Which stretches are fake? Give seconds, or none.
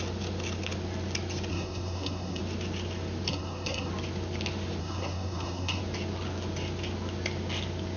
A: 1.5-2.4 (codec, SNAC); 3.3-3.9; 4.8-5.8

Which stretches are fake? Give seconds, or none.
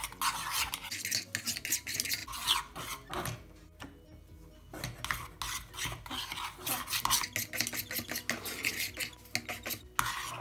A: none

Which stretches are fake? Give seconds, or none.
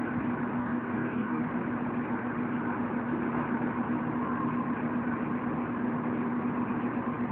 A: 0.6-1.4 (codec, DAC)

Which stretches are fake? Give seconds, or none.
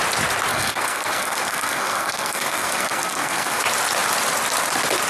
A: 0.5-3.6 (codec, SNAC)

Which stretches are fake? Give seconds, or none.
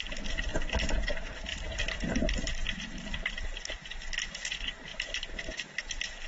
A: 1.5-3.7 (vocoder, BigVGAN v2); 4.9-5.8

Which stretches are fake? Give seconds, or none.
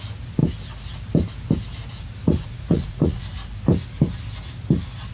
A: 2.2-3.2 (vocoder, Vocos)